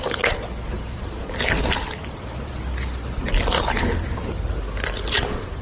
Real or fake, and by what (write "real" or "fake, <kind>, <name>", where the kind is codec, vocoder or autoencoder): real